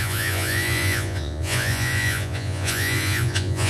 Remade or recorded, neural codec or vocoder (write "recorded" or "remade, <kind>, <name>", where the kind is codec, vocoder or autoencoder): remade, vocoder, Vocos